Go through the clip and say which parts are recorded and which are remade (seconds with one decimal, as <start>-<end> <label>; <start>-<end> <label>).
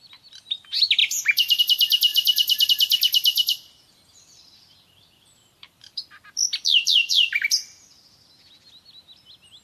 0.0-1.0 recorded; 1.0-1.6 remade; 1.6-2.1 recorded; 2.1-2.7 remade; 2.7-3.3 recorded; 3.3-8.2 remade; 8.2-9.6 recorded